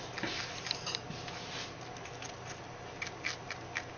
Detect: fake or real real